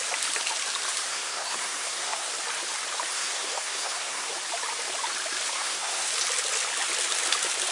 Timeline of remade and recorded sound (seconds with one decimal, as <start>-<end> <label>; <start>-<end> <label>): 0.0-1.1 recorded; 1.1-2.3 remade; 2.3-3.1 recorded; 3.1-4.3 remade; 4.3-5.5 recorded; 5.5-6.1 remade; 6.1-7.7 recorded